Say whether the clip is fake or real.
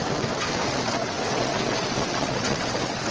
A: fake